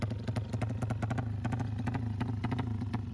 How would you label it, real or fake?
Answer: real